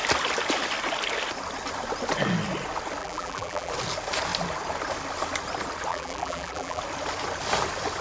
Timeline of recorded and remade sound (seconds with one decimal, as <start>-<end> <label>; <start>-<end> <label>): 0.0-3.0 recorded; 3.0-3.7 remade; 3.7-5.9 recorded; 5.9-6.8 remade; 6.8-8.0 recorded